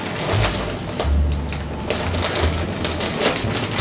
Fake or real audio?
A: real